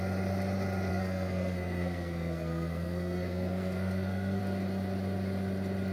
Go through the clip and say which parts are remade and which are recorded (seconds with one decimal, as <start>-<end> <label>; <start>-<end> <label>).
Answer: 0.0-0.9 recorded; 0.9-4.4 remade; 4.4-5.9 recorded